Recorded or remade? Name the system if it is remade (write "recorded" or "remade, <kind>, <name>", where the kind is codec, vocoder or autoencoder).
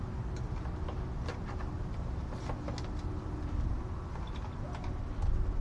recorded